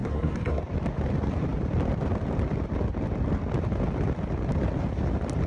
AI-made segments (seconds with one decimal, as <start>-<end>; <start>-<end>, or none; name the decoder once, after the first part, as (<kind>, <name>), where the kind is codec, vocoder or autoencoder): 0.0-0.6 (codec, SNAC)